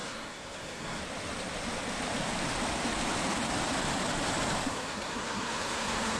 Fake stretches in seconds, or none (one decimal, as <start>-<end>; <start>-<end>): 0.0-1.0; 4.7-6.2